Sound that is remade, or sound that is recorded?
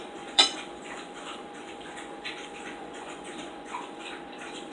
remade